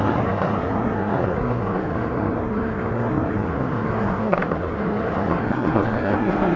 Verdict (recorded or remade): remade